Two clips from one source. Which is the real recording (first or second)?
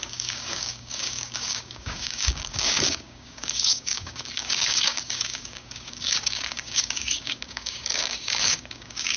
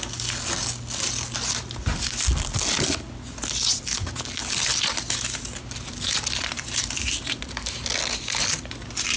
second